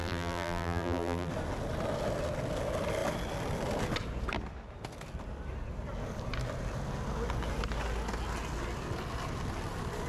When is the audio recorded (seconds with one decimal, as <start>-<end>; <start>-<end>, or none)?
1.3-10.1